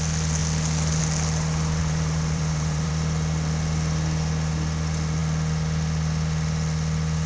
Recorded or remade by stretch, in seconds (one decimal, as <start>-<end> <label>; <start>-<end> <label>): 0.0-1.8 recorded; 1.8-2.9 remade; 2.9-7.3 recorded